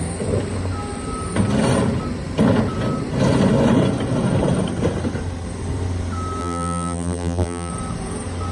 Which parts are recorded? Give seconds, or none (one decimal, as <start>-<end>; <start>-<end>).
0.0-6.4; 7.7-8.5